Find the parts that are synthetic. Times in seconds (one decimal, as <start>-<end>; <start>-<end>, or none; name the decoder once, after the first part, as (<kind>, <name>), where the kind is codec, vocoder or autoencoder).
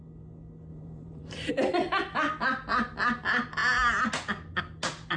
0.7-1.5 (vocoder, BigVGAN v2)